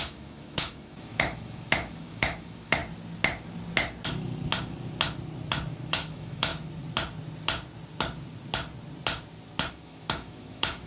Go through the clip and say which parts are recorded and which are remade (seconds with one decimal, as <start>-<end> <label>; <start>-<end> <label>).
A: 0.0-2.8 remade; 2.8-5.9 recorded; 5.9-6.5 remade; 6.5-9.7 recorded; 9.7-10.9 remade